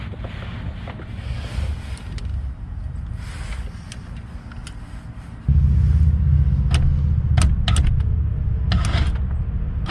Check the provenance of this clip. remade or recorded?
recorded